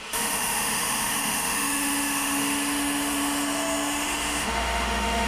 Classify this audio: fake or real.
fake